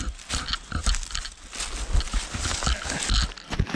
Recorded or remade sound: recorded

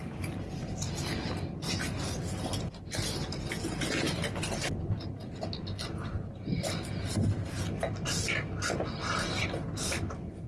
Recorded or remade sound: recorded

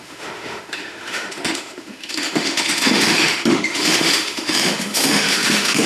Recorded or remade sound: remade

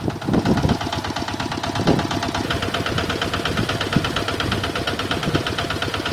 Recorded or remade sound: recorded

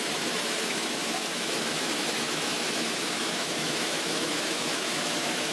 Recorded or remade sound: remade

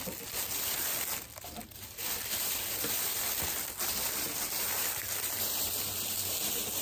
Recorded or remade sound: recorded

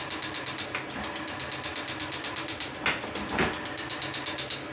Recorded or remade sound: recorded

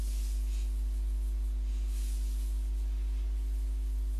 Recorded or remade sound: recorded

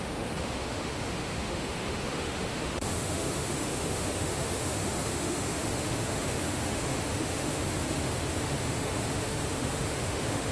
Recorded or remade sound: remade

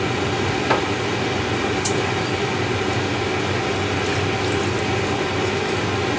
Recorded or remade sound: recorded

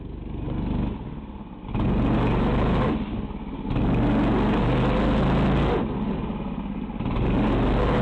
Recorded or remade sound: recorded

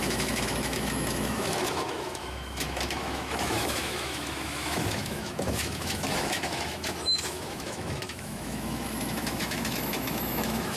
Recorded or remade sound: remade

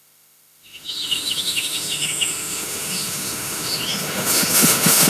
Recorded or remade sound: remade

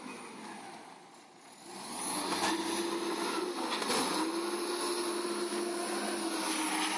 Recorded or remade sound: recorded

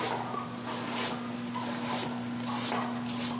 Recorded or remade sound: recorded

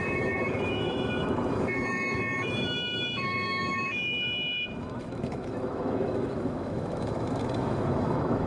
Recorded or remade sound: remade